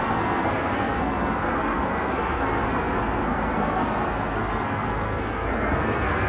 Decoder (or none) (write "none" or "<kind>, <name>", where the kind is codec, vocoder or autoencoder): codec, SNAC